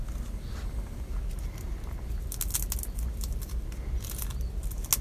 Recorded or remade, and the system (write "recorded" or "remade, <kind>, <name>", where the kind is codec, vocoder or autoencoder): recorded